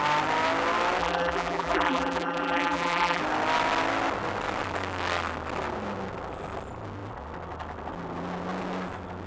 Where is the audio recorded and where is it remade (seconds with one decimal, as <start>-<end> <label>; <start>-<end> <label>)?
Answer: 0.0-1.0 recorded; 1.0-3.2 remade; 3.2-9.3 recorded